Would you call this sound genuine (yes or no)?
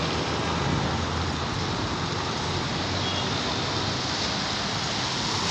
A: yes